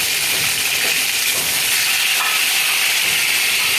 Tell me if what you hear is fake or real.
real